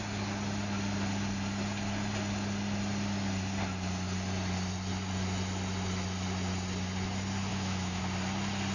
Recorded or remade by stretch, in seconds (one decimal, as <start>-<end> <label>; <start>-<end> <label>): 0.0-7.5 recorded; 7.5-8.0 remade; 8.0-8.7 recorded